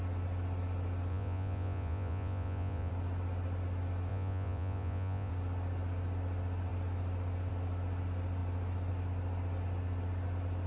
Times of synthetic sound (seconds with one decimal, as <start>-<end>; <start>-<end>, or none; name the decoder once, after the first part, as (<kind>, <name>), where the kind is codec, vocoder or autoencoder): 1.1-2.9 (vocoder, Vocos); 4.1-5.3